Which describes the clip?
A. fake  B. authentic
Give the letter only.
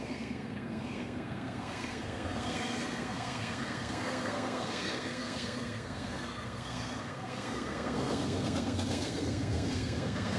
A